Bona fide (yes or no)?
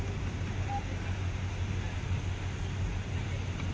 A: yes